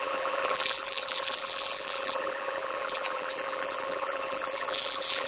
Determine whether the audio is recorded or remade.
remade